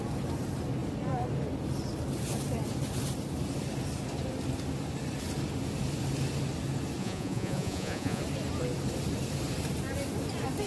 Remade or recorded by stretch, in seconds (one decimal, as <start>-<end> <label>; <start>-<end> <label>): 0.0-7.0 recorded; 7.0-8.2 remade; 8.2-10.7 recorded